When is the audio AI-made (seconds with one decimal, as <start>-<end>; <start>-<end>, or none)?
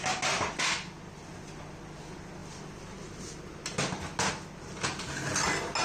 none